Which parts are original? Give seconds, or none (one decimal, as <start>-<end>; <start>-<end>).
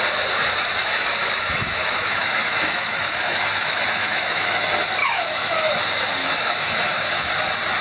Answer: 0.0-0.8; 4.6-5.0; 5.8-6.2; 7.3-7.8